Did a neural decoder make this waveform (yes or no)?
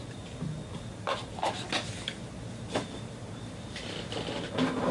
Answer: no